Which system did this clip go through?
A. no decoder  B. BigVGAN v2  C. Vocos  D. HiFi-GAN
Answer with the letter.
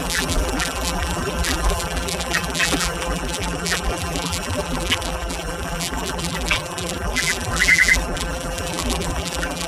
B